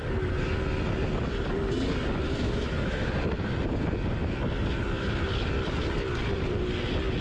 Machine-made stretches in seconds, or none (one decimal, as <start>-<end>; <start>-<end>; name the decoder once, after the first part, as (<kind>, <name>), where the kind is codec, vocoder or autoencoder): 2.3-3.1 (autoencoder, DAC-VAE)